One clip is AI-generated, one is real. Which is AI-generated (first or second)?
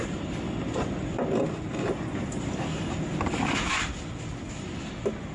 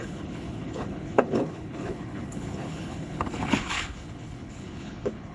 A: second